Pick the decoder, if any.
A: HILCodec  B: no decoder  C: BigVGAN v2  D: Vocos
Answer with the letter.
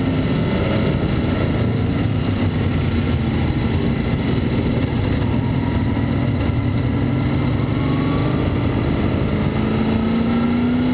B